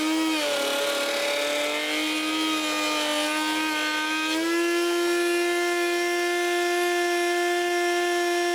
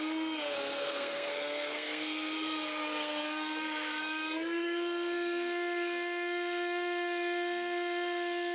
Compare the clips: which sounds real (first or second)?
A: first